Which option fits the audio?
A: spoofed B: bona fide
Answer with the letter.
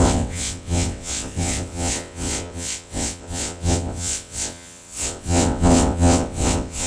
A